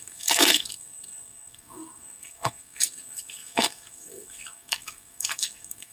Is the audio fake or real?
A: fake